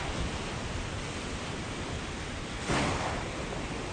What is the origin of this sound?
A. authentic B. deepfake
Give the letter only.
A